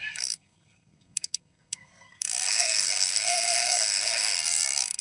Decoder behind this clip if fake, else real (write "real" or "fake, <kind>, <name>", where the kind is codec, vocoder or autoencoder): fake, codec, SNAC